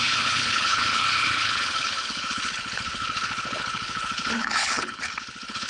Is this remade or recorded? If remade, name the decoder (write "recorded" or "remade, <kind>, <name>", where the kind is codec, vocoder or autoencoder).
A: remade, codec, HILCodec